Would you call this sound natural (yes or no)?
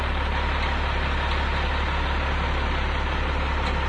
yes